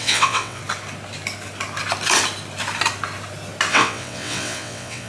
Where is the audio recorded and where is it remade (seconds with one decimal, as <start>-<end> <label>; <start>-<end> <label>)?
0.0-0.6 remade; 0.6-3.7 recorded; 3.7-5.1 remade

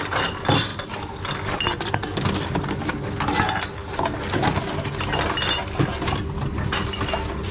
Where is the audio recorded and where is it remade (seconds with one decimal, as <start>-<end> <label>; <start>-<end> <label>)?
0.0-7.5 recorded

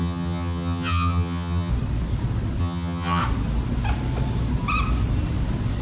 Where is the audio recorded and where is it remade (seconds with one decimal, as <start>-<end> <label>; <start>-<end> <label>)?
0.0-1.7 remade; 1.7-2.6 recorded; 2.6-3.2 remade; 3.2-5.8 recorded

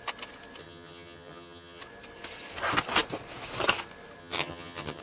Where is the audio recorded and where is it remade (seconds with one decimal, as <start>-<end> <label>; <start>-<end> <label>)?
0.0-0.6 recorded; 0.6-1.8 remade; 1.8-4.2 recorded; 4.2-5.0 remade

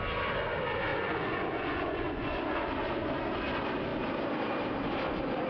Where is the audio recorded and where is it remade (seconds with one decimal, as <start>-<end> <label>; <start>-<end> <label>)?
0.0-0.9 recorded; 0.9-2.7 remade; 2.7-5.5 recorded

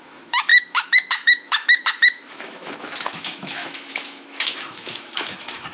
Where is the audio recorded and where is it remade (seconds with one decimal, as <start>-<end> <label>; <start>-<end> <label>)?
0.0-5.7 remade

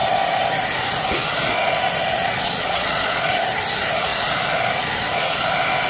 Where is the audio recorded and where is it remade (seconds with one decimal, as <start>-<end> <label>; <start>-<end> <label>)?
0.0-2.2 recorded; 2.2-3.3 remade; 3.3-5.9 recorded

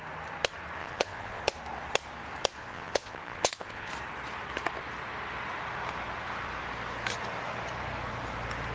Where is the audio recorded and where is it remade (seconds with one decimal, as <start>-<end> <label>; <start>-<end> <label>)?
0.0-0.8 recorded; 0.8-1.4 remade; 1.4-2.6 recorded; 2.6-3.9 remade; 3.9-8.7 recorded